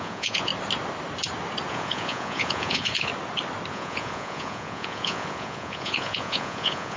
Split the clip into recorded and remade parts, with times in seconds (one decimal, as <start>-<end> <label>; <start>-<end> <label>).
0.0-0.5 remade; 0.5-1.7 recorded; 1.7-3.1 remade; 3.1-3.7 recorded; 3.7-7.0 remade

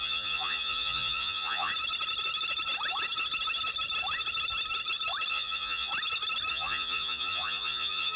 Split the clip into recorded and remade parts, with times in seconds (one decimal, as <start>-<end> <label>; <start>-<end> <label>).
0.0-1.7 remade; 1.7-5.3 recorded; 5.3-5.9 remade; 5.9-6.5 recorded; 6.5-8.2 remade

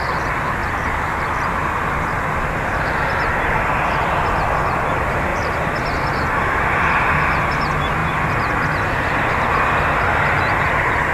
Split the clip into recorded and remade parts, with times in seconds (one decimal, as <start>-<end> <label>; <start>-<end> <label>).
0.0-11.1 recorded

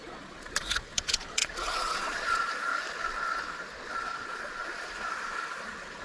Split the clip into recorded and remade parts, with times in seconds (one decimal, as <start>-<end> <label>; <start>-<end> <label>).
0.0-2.7 remade; 2.7-3.9 recorded; 3.9-6.0 remade

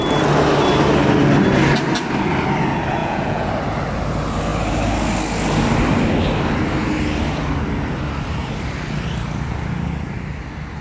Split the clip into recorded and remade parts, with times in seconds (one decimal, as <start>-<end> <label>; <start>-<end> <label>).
0.0-3.0 recorded; 3.0-3.5 remade; 3.5-10.8 recorded